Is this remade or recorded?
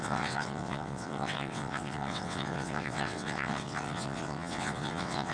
remade